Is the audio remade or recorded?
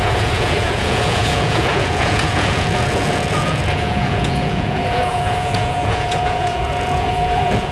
remade